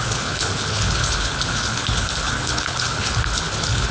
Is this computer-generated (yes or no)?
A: yes